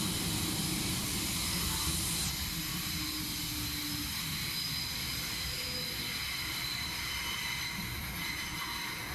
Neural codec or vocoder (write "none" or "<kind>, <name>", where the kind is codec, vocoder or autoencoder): none